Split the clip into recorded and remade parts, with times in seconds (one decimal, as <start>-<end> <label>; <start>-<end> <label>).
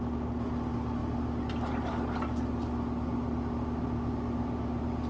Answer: 0.0-5.1 recorded